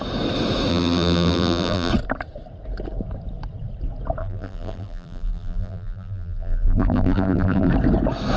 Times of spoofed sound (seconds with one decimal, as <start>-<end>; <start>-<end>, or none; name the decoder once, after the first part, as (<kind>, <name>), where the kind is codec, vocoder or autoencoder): 0.7-1.9 (vocoder, BigVGAN v2); 4.2-7.7